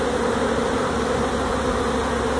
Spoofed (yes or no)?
no